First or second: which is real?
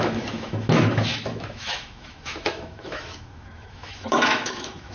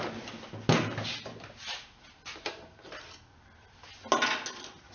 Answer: second